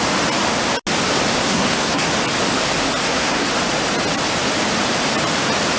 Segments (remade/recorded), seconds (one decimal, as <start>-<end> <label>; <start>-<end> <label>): 0.0-1.4 recorded; 1.4-2.1 remade; 2.1-3.0 recorded; 3.0-3.5 remade; 3.5-5.8 recorded